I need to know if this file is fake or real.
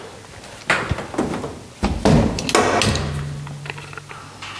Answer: real